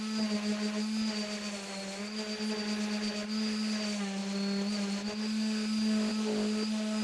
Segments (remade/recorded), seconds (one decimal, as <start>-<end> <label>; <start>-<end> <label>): 0.0-7.0 recorded

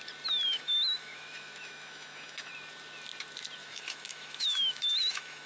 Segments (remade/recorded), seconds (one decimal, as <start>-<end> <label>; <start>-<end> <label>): 0.0-0.5 recorded; 0.5-2.5 remade; 2.5-3.6 recorded; 3.6-5.5 remade